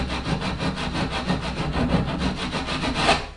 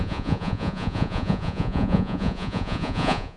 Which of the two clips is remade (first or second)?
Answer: second